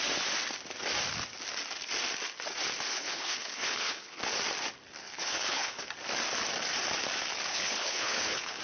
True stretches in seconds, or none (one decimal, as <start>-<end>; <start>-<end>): 0.0-2.9; 4.2-5.0; 5.8-7.5